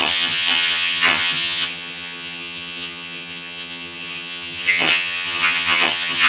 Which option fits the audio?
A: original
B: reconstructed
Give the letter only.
B